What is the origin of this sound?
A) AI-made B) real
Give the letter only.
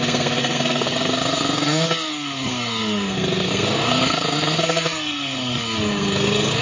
A